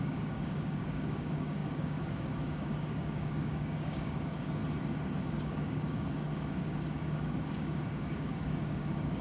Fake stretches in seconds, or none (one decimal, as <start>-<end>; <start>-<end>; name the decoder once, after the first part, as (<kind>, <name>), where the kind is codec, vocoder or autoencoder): 0.0-4.6 (codec, DAC); 5.2-9.2